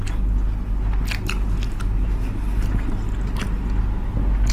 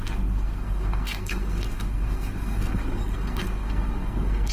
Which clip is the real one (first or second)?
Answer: first